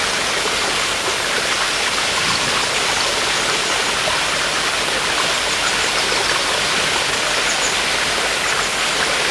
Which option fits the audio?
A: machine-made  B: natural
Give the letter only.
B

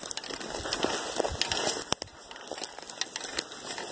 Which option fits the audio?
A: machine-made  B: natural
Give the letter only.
B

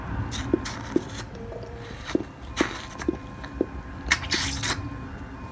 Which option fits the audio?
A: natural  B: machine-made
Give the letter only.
B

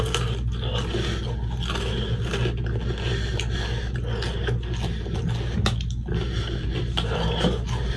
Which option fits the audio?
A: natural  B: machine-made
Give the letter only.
A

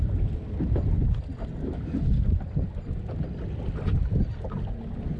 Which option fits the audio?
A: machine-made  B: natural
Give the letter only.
B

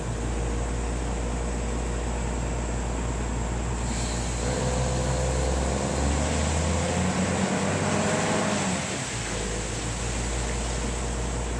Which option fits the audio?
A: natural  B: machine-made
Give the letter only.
A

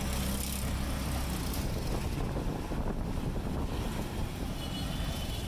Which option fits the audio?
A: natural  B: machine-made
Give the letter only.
A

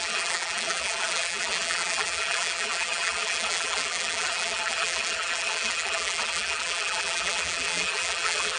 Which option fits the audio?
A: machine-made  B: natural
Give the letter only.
A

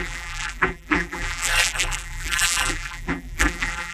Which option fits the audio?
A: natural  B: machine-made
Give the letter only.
B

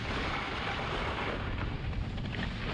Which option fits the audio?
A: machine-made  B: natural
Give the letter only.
B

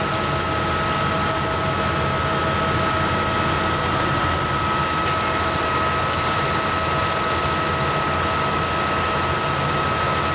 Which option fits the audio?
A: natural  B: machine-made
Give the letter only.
A